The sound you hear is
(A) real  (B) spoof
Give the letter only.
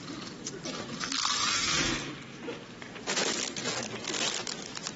A